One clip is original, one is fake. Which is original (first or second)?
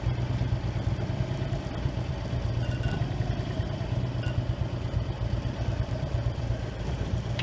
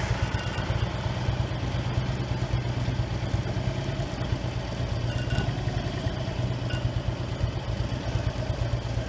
second